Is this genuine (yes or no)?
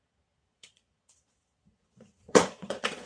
no